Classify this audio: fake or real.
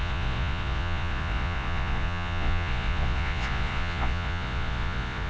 fake